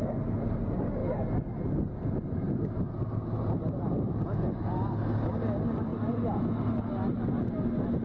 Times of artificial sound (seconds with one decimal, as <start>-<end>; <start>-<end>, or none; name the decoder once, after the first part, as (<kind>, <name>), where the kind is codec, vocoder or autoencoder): none